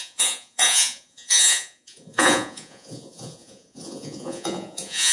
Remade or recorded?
remade